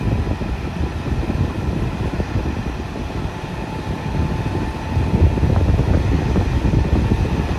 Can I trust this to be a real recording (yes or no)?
yes